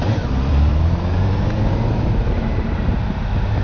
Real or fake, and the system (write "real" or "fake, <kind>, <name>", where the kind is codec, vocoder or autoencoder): fake, vocoder, BigVGAN v2